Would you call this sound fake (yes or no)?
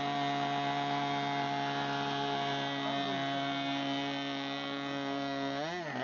no